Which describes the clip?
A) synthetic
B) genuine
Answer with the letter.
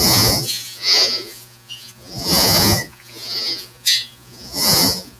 A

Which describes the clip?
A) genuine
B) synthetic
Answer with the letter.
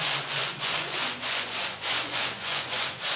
B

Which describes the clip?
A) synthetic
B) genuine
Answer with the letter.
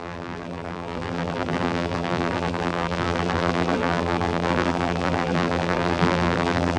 A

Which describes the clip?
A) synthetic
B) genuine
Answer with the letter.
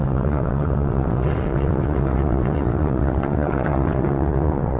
A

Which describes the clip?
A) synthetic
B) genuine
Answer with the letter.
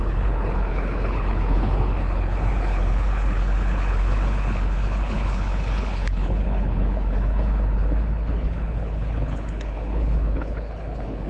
A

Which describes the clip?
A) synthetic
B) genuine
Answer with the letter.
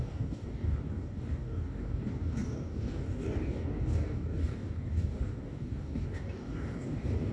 A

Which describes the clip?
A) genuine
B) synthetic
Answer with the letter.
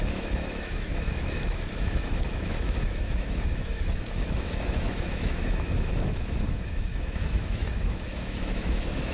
B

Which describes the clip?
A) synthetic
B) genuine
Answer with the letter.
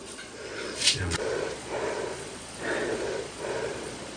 A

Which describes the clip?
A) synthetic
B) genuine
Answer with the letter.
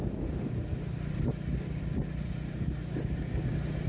B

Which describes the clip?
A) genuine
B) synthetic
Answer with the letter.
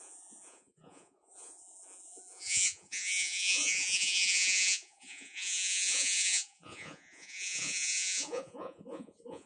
B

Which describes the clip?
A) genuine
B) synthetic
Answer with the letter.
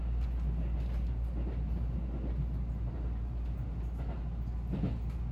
A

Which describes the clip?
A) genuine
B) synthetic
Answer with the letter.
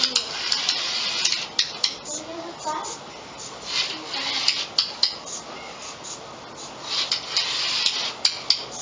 A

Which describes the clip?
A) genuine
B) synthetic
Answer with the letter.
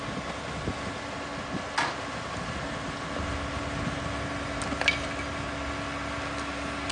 A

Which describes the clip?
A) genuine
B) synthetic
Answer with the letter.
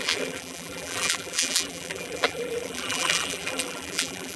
B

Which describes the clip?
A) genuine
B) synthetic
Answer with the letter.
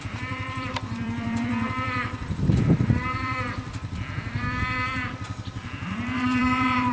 B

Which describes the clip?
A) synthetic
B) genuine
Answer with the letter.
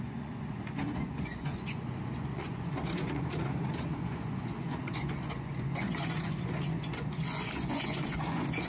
A